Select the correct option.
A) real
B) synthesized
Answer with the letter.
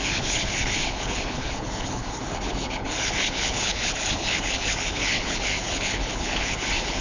B